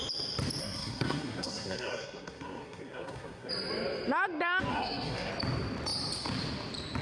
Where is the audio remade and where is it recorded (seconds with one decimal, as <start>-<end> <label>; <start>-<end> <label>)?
0.0-0.6 recorded; 0.6-3.5 remade; 3.5-4.7 recorded; 4.7-5.3 remade; 5.3-7.0 recorded